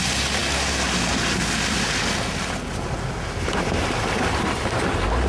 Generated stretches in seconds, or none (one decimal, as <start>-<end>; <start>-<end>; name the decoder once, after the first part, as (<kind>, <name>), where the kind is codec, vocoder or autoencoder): none